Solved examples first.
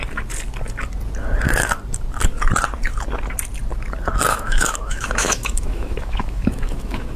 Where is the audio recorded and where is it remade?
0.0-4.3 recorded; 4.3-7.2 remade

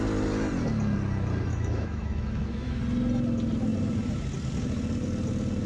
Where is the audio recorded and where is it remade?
0.0-1.5 recorded; 1.5-2.8 remade; 2.8-5.7 recorded

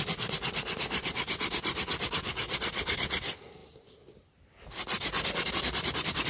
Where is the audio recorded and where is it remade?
0.0-6.3 recorded

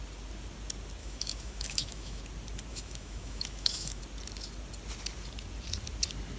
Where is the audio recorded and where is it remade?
0.0-1.0 recorded; 1.0-2.2 remade; 2.2-2.7 recorded; 2.7-4.0 remade; 4.0-6.4 recorded